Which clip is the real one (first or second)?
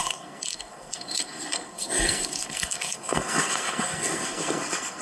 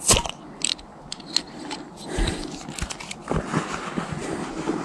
second